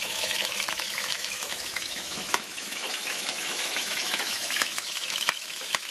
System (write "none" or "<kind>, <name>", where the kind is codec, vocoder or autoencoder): autoencoder, DAC-VAE